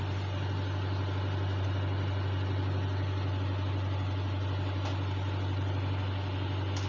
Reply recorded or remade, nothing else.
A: recorded